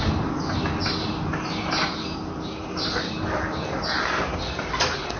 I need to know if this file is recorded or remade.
recorded